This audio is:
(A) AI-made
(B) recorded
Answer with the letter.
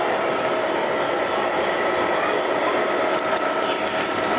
B